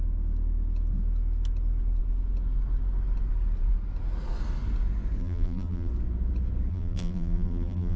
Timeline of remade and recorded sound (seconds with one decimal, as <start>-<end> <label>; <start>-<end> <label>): 0.0-5.2 recorded; 5.2-5.9 remade; 5.9-6.7 recorded; 6.7-8.0 remade